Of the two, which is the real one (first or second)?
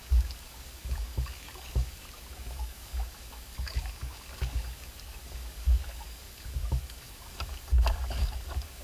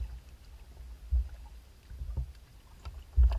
second